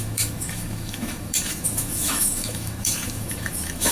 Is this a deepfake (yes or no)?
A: yes